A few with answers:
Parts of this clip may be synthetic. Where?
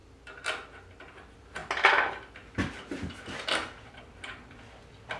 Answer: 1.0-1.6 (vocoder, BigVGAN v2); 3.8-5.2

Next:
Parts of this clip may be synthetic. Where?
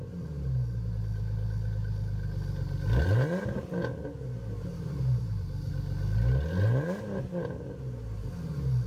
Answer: 4.7-5.7 (vocoder, BigVGAN v2)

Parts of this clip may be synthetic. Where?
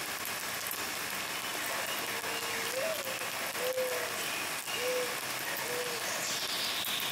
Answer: none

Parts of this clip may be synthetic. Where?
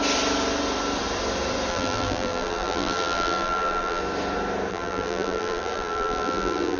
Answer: 1.7-4.0 (vocoder, BigVGAN v2); 4.7-6.8